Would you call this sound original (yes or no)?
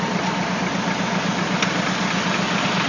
yes